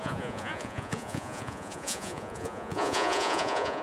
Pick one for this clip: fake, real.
fake